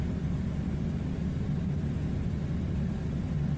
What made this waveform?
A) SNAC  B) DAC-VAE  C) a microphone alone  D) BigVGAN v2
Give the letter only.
C